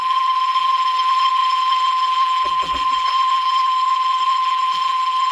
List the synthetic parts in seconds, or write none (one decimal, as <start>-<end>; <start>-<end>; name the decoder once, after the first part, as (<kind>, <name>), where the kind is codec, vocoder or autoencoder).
0.0-5.3 (vocoder, BigVGAN v2)